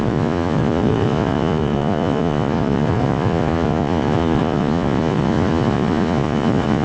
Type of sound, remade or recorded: remade